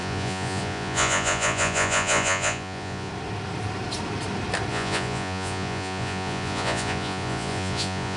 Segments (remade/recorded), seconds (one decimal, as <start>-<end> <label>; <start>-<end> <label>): 0.0-3.1 remade; 3.1-4.7 recorded; 4.7-8.2 remade